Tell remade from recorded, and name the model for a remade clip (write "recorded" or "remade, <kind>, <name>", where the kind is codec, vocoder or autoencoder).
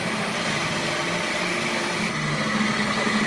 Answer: recorded